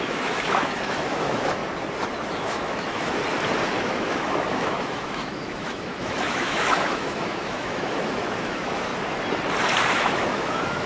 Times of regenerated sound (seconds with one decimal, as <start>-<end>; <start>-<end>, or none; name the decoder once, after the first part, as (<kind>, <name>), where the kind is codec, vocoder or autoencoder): 0.0-1.6 (autoencoder, DAC-VAE); 2.3-3.2; 3.8-8.9; 9.9-10.9